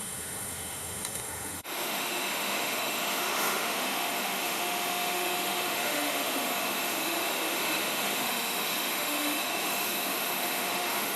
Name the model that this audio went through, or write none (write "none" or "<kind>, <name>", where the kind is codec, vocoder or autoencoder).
autoencoder, DAC-VAE